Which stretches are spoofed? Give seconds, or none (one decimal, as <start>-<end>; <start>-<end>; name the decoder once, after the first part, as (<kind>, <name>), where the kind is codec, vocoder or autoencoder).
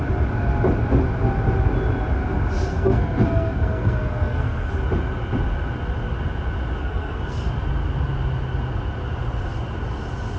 2.7-4.7 (codec, SNAC); 6.8-7.5